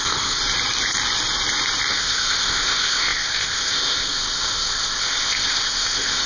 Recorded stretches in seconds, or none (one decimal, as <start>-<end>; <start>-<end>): 0.4-1.9